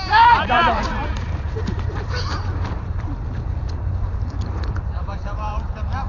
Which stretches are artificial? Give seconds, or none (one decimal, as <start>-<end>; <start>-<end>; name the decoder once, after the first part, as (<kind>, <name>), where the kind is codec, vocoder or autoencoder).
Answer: 0.0-6.1 (vocoder, BigVGAN v2)